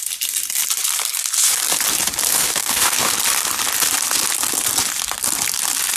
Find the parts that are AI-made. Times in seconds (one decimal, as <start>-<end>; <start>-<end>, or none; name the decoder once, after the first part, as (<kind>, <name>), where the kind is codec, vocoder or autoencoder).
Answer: 2.3-3.1 (codec, DAC)